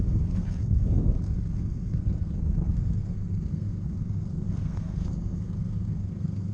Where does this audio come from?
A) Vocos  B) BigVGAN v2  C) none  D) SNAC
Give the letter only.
D